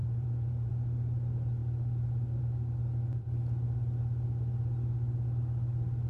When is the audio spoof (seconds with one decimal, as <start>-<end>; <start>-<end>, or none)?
0.0-0.7

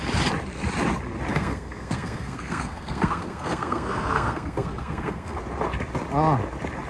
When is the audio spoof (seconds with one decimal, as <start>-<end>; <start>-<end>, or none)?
1.3-5.4

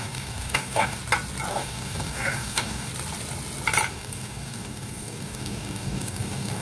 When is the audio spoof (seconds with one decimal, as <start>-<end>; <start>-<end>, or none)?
0.0-1.0; 1.5-2.9; 3.9-6.6

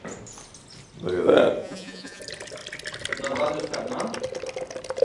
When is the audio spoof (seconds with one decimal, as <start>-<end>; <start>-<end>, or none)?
1.6-2.2

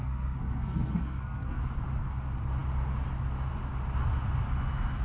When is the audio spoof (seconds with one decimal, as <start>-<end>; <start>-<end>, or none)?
0.0-1.6

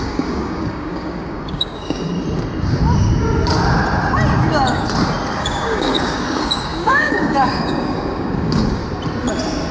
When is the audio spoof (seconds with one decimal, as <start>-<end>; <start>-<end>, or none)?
0.0-2.1; 5.4-8.8